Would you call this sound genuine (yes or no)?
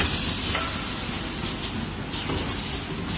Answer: yes